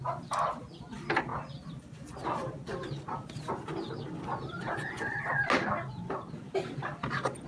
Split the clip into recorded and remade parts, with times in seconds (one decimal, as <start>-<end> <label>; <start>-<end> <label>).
0.0-7.5 recorded